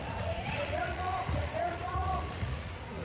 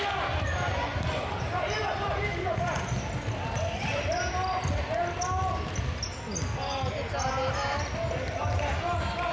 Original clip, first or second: second